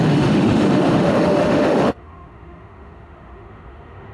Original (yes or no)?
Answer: no